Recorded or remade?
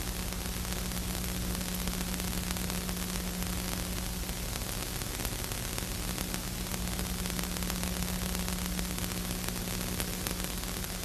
recorded